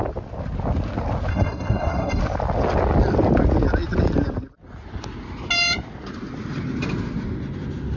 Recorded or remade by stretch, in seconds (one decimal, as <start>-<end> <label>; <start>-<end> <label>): 0.0-1.3 recorded; 1.3-2.2 remade; 2.2-8.0 recorded